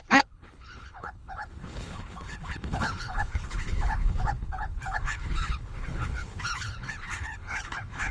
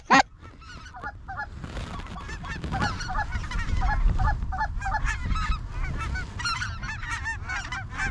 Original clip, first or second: second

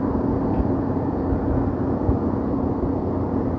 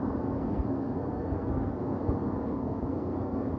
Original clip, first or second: first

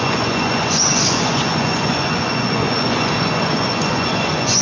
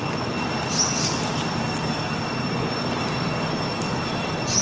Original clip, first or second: second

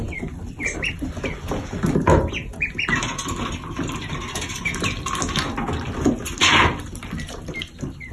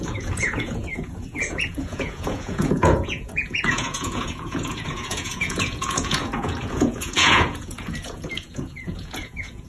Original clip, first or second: first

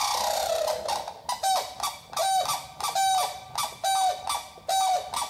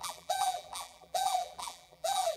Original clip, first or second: first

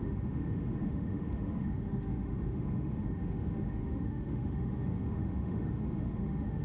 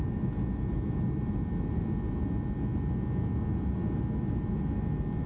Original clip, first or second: second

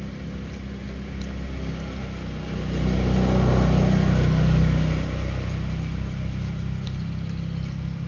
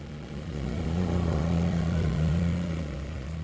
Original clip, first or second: first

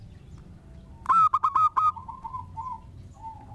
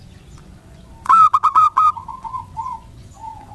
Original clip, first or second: first